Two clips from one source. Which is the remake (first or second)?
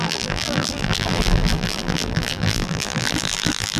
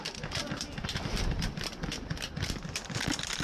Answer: first